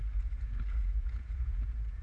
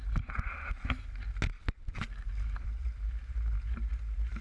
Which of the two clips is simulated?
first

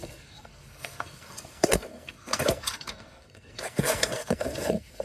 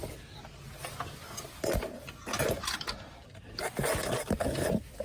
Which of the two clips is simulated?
first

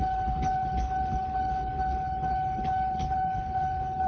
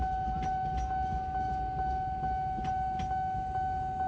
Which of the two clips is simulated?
first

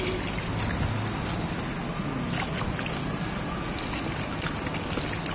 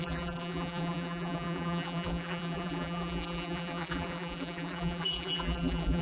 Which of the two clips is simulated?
second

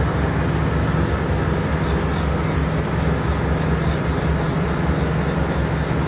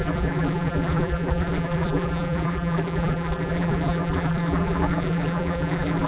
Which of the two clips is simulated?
second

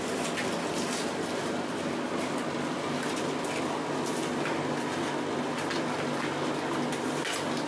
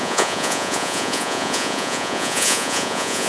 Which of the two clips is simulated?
second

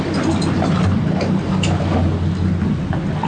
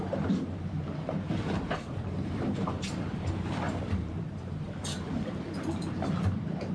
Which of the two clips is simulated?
second